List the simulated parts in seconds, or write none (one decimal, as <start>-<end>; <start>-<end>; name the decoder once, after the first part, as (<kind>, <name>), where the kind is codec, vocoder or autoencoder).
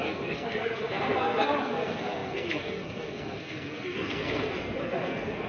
0.0-5.5 (codec, SNAC)